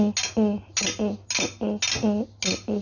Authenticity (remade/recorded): recorded